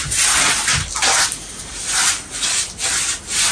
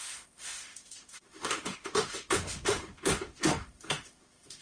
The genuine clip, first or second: first